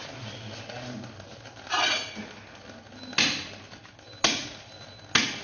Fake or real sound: real